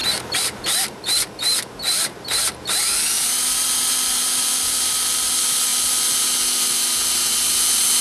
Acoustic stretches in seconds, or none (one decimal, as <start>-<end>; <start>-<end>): 0.0-8.0